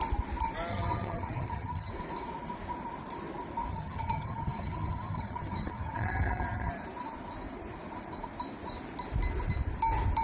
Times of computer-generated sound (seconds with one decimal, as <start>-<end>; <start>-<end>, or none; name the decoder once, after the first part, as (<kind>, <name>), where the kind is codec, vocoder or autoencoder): 0.7-1.9 (vocoder, HiFi-GAN); 3.7-6.7